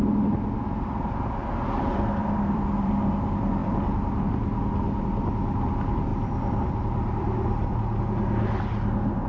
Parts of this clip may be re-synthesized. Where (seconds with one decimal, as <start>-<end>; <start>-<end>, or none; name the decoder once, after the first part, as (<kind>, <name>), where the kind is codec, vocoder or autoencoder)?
2.2-2.9 (vocoder, BigVGAN v2); 3.6-4.2; 6.1-8.0